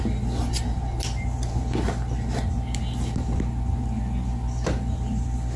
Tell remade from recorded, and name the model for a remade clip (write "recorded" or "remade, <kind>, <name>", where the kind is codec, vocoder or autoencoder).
recorded